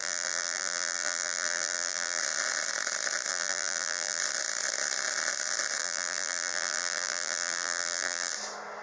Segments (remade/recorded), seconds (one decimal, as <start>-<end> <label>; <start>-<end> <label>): 0.0-2.2 remade; 2.2-3.3 recorded; 3.3-4.2 remade; 4.2-5.8 recorded; 5.8-8.3 remade; 8.3-8.8 recorded